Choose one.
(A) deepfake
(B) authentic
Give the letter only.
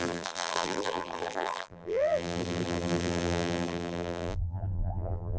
A